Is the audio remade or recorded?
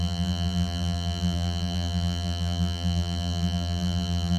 remade